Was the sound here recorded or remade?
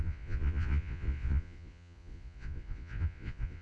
remade